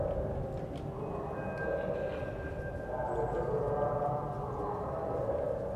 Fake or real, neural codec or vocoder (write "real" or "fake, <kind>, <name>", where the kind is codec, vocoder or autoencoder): real